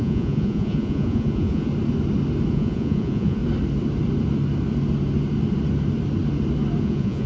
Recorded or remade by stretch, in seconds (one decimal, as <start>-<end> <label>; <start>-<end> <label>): 0.0-1.7 remade; 1.7-2.5 recorded; 2.5-3.4 remade; 3.4-6.8 recorded; 6.8-7.3 remade